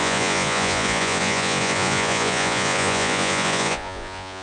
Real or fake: fake